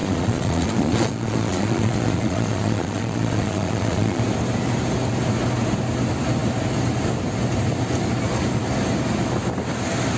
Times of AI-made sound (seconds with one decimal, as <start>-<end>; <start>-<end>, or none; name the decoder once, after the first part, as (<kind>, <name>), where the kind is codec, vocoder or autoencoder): 0.0-4.2 (vocoder, Vocos)